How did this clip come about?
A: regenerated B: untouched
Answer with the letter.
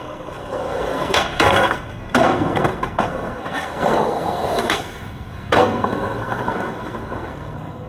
A